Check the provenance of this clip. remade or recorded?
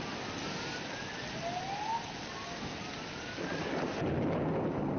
recorded